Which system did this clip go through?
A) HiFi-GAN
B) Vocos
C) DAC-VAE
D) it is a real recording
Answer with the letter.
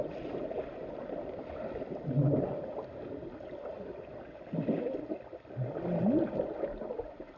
D